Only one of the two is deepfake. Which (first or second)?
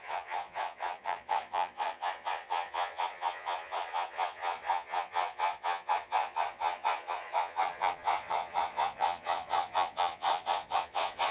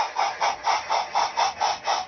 first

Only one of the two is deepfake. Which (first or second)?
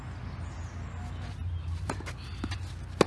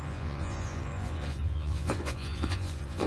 second